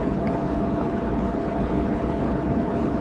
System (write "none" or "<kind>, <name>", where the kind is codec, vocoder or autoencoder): codec, HILCodec